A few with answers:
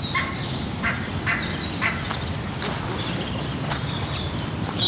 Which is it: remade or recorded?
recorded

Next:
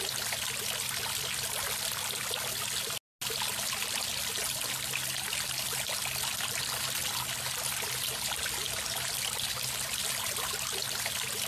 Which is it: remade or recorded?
recorded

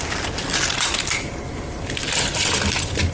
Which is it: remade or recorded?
recorded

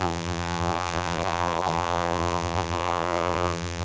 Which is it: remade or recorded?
remade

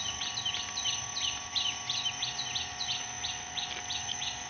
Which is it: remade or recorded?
recorded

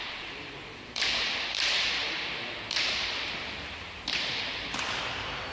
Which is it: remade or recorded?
remade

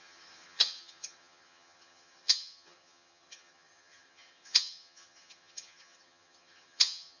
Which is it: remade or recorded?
remade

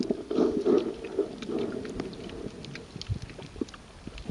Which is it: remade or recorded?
recorded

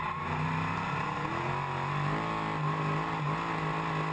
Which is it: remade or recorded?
recorded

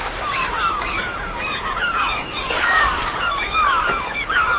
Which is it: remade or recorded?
remade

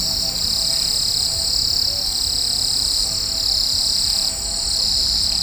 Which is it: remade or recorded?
recorded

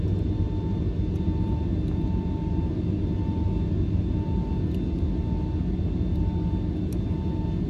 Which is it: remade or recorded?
recorded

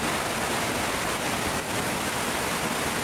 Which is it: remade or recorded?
recorded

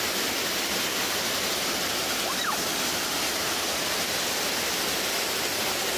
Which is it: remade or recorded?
recorded